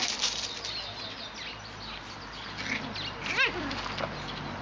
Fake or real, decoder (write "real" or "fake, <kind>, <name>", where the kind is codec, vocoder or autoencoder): real